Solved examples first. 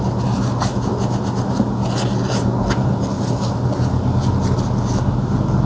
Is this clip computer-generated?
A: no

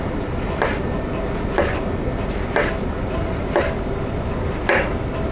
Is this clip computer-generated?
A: no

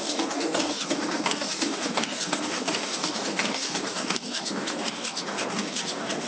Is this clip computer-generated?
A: yes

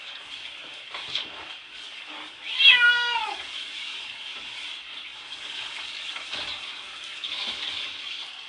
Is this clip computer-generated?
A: yes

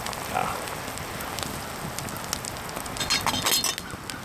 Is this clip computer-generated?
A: no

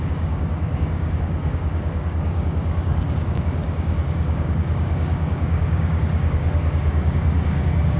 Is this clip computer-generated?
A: yes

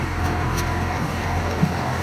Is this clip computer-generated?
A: yes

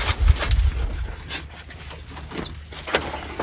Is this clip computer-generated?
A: no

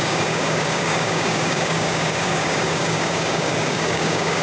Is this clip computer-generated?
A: yes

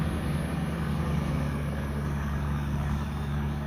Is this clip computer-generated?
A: yes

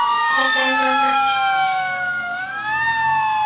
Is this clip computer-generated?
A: yes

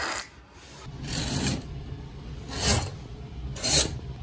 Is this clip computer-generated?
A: no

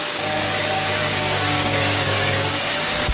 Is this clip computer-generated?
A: yes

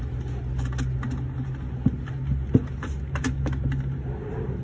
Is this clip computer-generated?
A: no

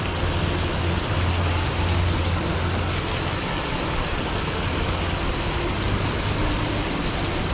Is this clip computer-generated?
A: no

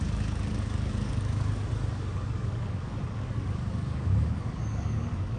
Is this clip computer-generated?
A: yes